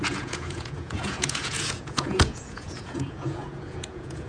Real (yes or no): no